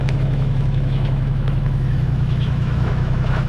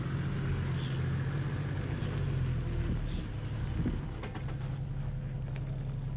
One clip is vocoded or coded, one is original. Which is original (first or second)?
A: second